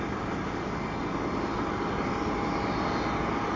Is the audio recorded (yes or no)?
yes